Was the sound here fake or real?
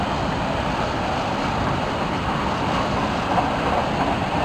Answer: real